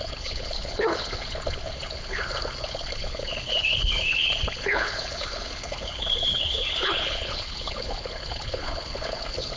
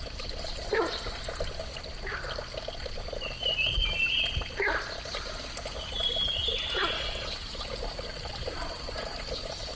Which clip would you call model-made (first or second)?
first